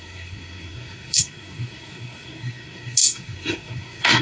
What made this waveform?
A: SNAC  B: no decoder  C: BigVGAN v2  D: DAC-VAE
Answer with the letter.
A